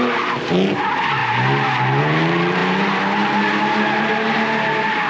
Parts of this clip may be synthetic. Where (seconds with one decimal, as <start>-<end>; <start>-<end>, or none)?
none